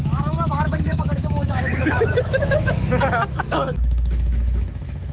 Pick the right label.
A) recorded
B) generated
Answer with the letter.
B